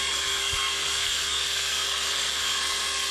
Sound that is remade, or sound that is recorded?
remade